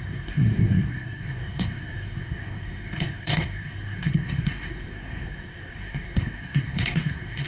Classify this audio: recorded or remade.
remade